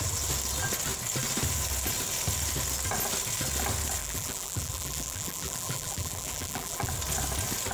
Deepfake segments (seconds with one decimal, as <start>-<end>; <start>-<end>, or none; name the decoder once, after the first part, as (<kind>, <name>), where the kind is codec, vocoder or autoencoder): 4.0-6.9 (vocoder, BigVGAN v2)